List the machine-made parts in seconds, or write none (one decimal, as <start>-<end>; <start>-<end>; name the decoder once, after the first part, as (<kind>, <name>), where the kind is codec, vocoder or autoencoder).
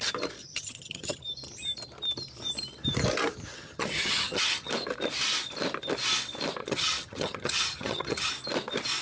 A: 0.4-1.2 (vocoder, HiFi-GAN); 3.5-4.7; 6.6-8.3